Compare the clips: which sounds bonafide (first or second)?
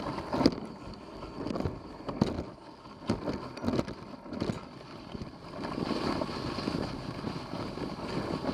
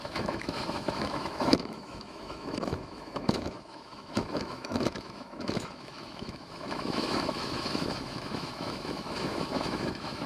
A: first